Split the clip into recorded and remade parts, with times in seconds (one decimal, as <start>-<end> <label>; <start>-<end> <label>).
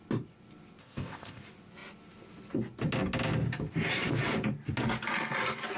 0.0-0.8 recorded; 0.8-1.4 remade; 1.4-5.8 recorded